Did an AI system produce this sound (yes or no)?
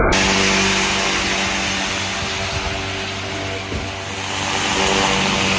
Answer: no